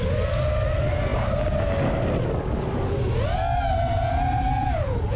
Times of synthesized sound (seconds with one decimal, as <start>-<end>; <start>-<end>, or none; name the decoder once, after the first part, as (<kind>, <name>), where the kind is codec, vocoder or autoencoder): none